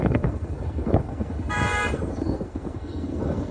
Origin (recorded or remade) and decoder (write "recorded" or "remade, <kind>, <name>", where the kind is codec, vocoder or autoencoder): remade, codec, SNAC